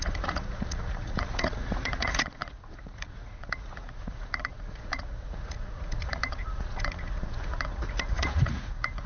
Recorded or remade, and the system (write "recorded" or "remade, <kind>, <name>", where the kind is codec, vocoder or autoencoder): remade, vocoder, Vocos